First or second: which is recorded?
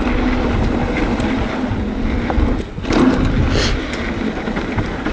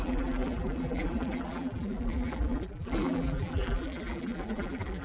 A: first